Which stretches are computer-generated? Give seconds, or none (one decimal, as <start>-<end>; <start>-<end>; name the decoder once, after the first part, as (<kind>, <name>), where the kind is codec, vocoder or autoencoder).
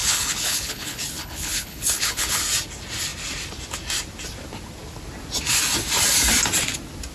0.0-2.4 (codec, HILCodec)